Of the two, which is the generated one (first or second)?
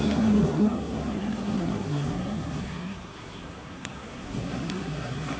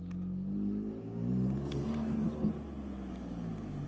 first